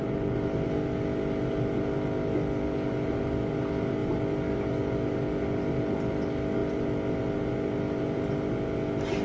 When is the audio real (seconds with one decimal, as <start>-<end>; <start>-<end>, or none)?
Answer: 0.0-9.2